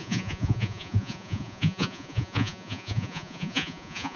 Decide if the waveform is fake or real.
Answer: fake